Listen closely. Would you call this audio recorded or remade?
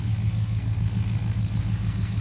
remade